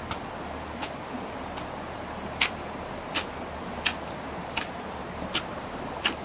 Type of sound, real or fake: real